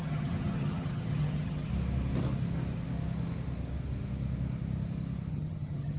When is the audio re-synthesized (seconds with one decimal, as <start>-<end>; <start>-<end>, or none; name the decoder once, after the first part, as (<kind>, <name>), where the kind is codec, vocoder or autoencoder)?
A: 0.0-1.7 (vocoder, HiFi-GAN); 5.3-6.0